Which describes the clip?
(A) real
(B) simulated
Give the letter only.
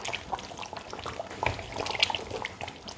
A